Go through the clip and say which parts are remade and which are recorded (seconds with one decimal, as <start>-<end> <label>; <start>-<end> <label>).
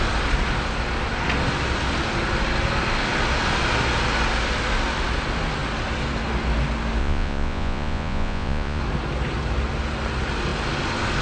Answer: 0.0-7.0 recorded; 7.0-8.8 remade; 8.8-11.2 recorded